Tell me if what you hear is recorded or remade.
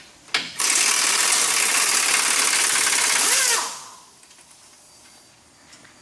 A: recorded